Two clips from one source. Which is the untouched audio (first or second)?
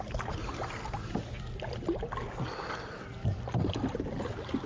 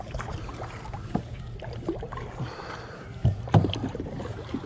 first